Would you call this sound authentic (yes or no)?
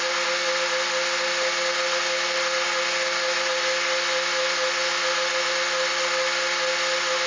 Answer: yes